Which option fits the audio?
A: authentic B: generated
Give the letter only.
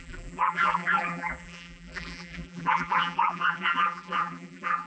B